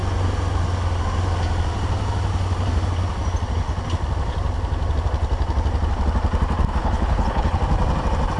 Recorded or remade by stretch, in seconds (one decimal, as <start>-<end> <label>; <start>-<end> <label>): 0.0-6.8 recorded; 6.8-7.6 remade; 7.6-8.4 recorded